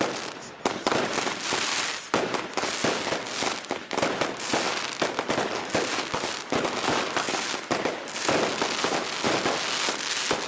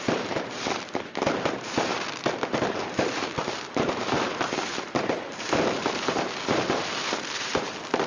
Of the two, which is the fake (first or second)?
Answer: second